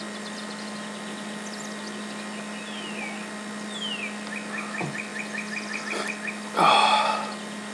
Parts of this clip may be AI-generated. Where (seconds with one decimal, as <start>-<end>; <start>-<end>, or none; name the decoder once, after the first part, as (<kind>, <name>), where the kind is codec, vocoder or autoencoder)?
none